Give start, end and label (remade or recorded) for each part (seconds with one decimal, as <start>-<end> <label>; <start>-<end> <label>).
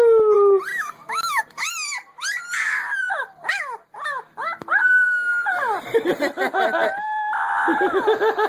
0.0-0.7 recorded; 0.7-1.4 remade; 1.4-8.5 recorded